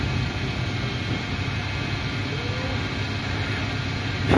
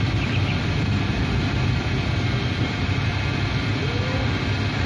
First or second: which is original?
first